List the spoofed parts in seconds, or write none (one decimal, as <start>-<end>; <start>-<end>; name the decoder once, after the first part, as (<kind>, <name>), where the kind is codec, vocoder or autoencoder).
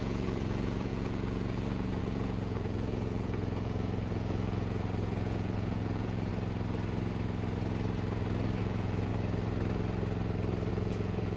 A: 0.0-6.3 (vocoder, Vocos); 8.6-9.1; 10.7-11.4